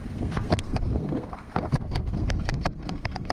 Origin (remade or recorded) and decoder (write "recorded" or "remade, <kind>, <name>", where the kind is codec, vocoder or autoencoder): remade, codec, SNAC